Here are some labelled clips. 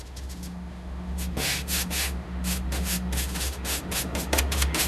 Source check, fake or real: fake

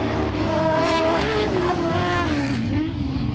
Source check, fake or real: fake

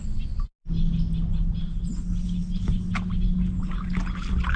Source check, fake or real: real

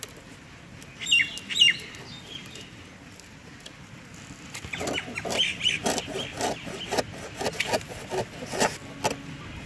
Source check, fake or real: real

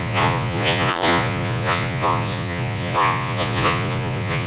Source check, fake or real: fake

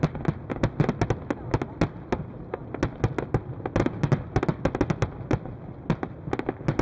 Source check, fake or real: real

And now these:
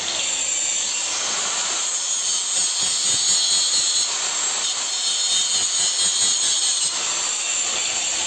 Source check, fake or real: real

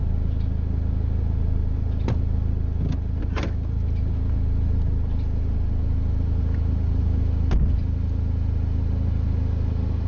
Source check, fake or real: real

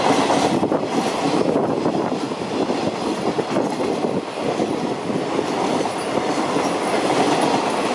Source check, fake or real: real